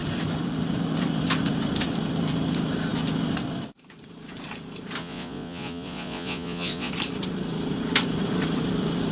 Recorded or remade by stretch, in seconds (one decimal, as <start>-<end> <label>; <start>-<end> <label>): 0.0-5.0 recorded; 5.0-6.9 remade; 6.9-9.1 recorded